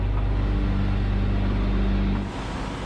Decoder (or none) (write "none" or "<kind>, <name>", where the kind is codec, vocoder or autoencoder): none